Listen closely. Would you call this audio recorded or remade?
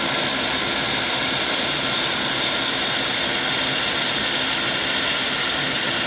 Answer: recorded